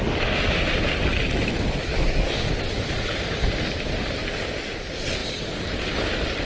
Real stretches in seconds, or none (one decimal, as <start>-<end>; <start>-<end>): 0.0-6.4